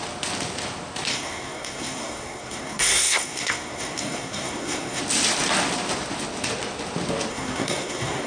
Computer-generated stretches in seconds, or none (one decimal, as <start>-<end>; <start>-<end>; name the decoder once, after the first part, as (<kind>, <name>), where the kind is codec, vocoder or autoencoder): 1.1-5.0 (codec, SNAC); 7.3-8.3